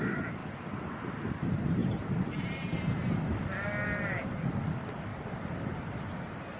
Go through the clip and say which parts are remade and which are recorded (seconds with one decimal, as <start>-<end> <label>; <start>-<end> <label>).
0.0-1.8 recorded; 1.8-2.8 remade; 2.8-6.6 recorded